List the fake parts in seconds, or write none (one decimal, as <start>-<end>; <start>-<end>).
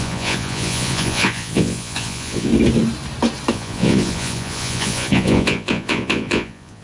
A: 0.0-2.5; 3.5-6.8